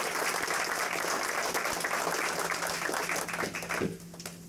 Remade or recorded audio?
recorded